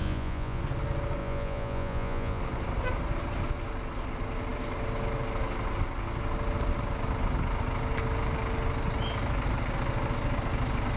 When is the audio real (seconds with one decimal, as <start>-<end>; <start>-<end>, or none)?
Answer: 0.6-1.2; 2.4-11.0